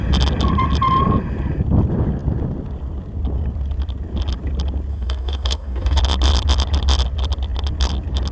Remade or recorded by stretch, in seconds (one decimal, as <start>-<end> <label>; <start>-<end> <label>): 0.0-4.9 recorded; 4.9-6.0 remade; 6.0-8.3 recorded